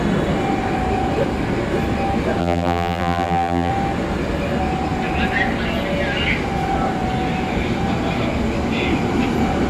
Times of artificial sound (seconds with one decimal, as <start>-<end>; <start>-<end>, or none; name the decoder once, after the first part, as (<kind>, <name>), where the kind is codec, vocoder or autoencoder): 2.4-3.7 (vocoder, BigVGAN v2)